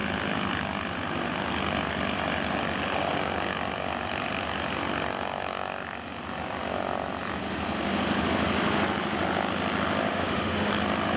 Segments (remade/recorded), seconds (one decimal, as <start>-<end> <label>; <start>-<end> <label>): 0.0-10.1 recorded; 10.1-10.7 remade; 10.7-11.2 recorded